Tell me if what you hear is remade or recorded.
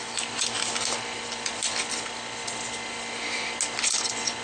recorded